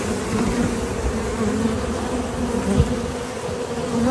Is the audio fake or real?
real